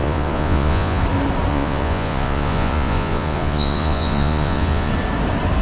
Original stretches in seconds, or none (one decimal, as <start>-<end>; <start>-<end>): 1.0-1.5; 4.9-5.6